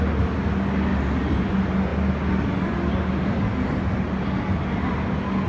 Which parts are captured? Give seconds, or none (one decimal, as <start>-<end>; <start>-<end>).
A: 0.0-0.9; 1.5-5.5